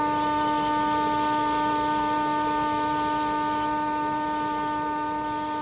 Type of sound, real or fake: real